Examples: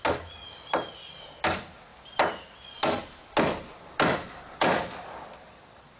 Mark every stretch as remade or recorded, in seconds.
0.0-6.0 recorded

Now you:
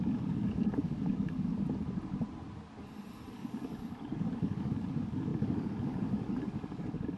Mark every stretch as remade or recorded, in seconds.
0.0-1.5 remade; 1.5-3.3 recorded; 3.3-7.2 remade

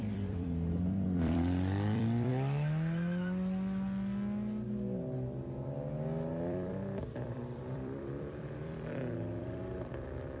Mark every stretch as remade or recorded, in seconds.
0.0-2.3 remade; 2.3-6.3 recorded; 6.3-10.4 remade

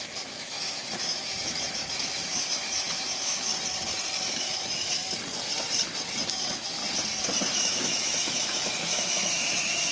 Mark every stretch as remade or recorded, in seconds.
0.0-3.5 remade; 3.5-4.3 recorded; 4.3-5.0 remade; 5.0-6.3 recorded; 6.3-6.8 remade; 6.8-7.6 recorded; 7.6-9.9 remade

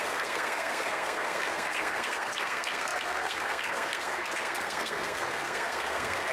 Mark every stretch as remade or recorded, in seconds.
0.0-6.3 remade

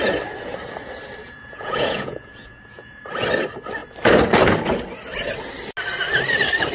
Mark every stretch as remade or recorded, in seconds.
0.0-1.2 recorded; 1.2-3.0 remade; 3.0-6.7 recorded

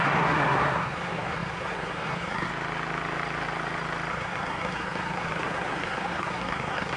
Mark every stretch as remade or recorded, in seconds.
0.0-2.5 remade; 2.5-4.1 recorded; 4.1-7.0 remade

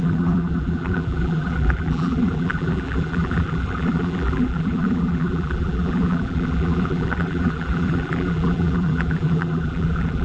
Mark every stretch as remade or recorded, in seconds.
0.0-10.2 remade